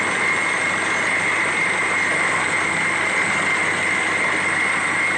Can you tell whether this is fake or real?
real